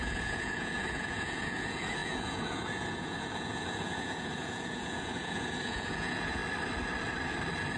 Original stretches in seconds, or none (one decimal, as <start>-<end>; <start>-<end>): 6.4-7.8